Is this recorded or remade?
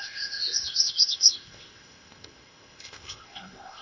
remade